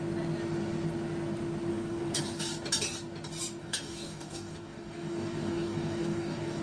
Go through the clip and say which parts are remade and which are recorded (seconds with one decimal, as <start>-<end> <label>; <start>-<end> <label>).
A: 0.0-1.7 recorded; 1.7-2.2 remade; 2.2-3.6 recorded; 3.6-6.6 remade